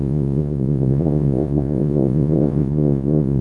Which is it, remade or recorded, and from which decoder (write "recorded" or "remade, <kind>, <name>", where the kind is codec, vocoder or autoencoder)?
remade, vocoder, Vocos